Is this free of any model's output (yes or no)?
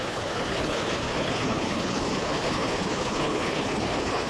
no